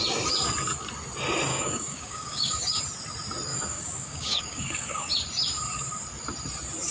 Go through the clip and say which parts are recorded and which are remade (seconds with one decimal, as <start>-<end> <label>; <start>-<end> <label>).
0.0-1.5 recorded; 1.5-2.8 remade; 2.8-3.5 recorded; 3.5-5.1 remade; 5.1-6.9 recorded